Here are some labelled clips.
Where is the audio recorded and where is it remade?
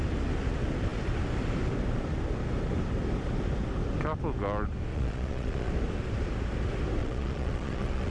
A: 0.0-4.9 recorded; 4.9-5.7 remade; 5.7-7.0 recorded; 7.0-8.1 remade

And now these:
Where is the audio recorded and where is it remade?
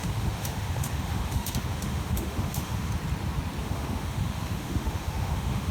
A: 0.0-2.9 remade; 2.9-3.6 recorded; 3.6-5.7 remade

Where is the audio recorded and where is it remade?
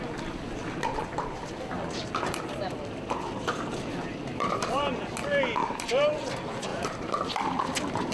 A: 0.0-4.3 recorded; 4.3-4.9 remade; 4.9-5.6 recorded; 5.6-6.3 remade; 6.3-6.7 recorded; 6.7-7.2 remade; 7.2-8.1 recorded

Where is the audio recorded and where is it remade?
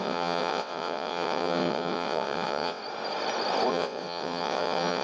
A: 0.0-2.8 remade; 2.8-3.7 recorded; 3.7-5.0 remade